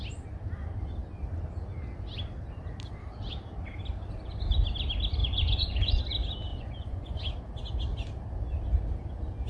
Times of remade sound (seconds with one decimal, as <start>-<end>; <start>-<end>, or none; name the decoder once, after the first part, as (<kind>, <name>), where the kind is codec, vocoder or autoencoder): 5.2-6.0 (vocoder, Vocos); 6.5-7.2